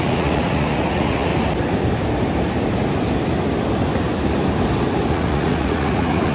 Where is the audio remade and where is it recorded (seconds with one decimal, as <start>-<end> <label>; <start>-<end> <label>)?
0.0-1.3 remade; 1.3-5.1 recorded; 5.1-6.3 remade